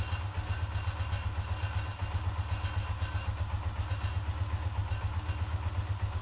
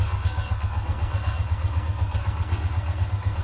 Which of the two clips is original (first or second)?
first